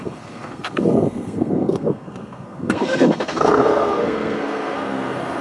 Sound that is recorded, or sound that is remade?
remade